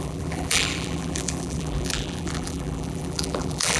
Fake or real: fake